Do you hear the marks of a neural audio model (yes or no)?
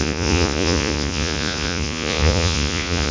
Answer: yes